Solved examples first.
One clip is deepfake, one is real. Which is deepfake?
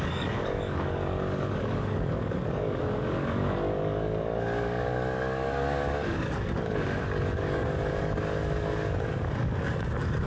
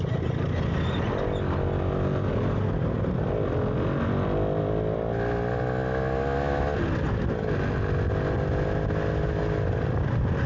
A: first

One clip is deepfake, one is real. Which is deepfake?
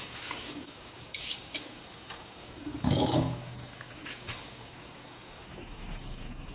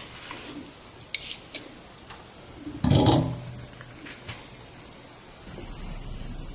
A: first